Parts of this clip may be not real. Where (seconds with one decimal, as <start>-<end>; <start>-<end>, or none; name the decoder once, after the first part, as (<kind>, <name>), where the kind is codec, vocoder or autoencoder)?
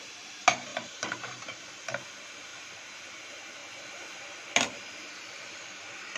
0.7-1.6 (vocoder, BigVGAN v2); 2.5-3.2